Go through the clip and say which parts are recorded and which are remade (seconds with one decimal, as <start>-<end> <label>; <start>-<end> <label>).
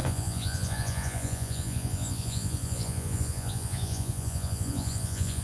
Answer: 0.0-5.4 remade